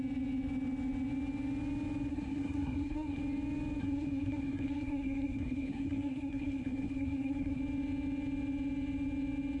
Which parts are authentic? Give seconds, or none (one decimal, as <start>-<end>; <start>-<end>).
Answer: 0.0-2.1; 3.2-3.8; 7.6-9.6